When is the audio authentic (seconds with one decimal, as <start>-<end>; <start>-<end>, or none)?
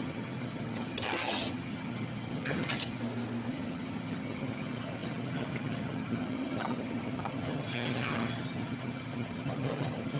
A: 3.0-3.5